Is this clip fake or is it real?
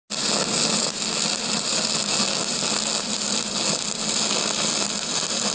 real